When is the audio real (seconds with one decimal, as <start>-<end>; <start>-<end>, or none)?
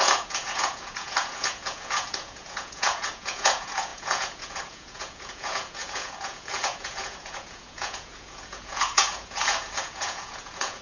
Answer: none